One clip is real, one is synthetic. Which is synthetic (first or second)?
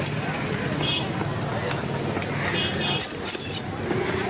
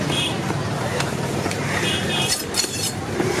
second